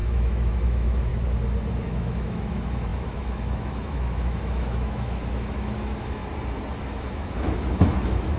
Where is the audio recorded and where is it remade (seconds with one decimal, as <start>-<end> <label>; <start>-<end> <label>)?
0.0-1.1 remade; 1.1-1.7 recorded; 1.7-6.2 remade; 6.2-6.9 recorded; 6.9-8.4 remade